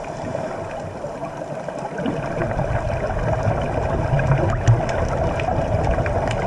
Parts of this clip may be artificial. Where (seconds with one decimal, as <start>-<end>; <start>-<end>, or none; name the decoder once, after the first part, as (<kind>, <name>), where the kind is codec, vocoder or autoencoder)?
1.2-1.9 (vocoder, BigVGAN v2)